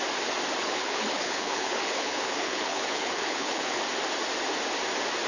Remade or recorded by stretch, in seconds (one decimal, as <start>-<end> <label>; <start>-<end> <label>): 0.0-0.6 recorded; 0.6-3.8 remade; 3.8-5.3 recorded

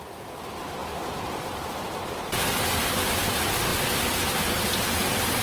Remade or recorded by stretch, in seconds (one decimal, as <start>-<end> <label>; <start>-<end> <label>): 0.0-3.7 remade; 3.7-4.9 recorded; 4.9-5.4 remade

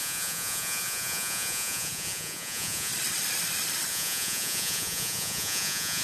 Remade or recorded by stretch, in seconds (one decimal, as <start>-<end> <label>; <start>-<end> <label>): 0.0-2.9 remade; 2.9-3.9 recorded; 3.9-6.0 remade

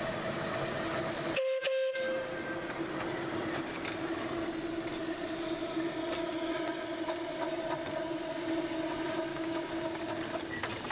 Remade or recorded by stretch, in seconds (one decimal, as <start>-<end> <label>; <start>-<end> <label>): 0.0-9.3 recorded; 9.3-10.0 remade; 10.0-10.9 recorded

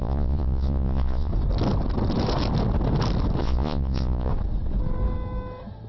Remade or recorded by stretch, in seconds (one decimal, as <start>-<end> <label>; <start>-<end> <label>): 0.0-1.3 remade; 1.3-3.4 recorded; 3.4-4.3 remade; 4.3-5.9 recorded

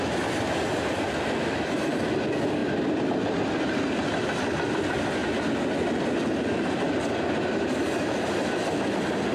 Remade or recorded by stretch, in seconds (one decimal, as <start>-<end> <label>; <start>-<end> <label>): 0.0-9.3 recorded

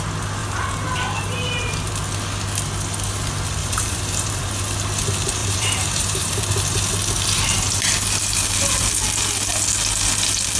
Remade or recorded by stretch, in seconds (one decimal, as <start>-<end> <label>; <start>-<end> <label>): 0.0-0.4 recorded; 0.4-1.9 remade; 1.9-3.6 recorded; 3.6-4.5 remade; 4.5-5.4 recorded; 5.4-6.4 remade; 6.4-10.6 recorded